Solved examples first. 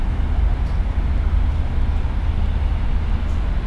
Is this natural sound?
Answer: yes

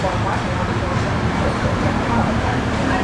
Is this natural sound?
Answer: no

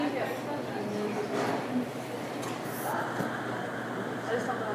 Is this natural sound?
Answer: yes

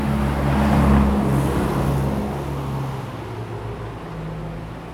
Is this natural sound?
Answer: yes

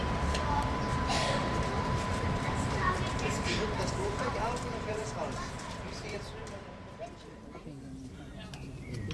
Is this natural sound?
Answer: no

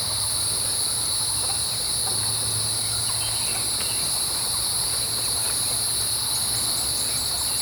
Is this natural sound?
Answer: yes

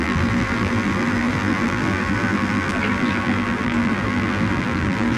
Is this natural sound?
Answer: no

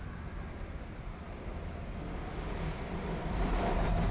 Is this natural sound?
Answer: no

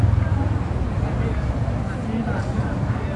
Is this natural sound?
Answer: yes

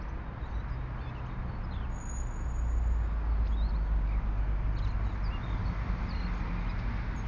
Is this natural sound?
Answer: yes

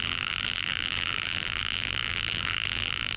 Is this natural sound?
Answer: no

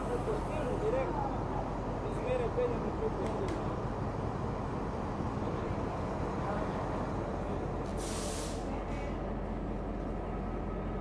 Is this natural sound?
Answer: yes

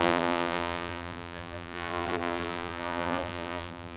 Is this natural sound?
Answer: no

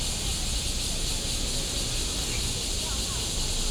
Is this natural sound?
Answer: yes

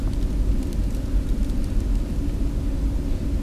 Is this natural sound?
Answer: yes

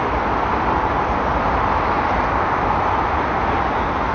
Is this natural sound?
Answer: yes